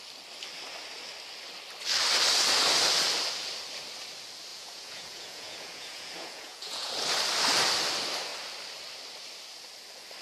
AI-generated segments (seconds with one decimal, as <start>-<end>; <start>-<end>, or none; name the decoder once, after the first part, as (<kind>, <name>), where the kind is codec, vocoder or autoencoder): 4.5-6.9 (vocoder, Vocos)